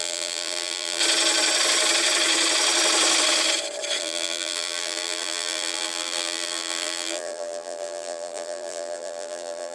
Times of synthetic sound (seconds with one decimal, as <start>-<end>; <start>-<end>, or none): 0.0-1.0; 4.0-9.7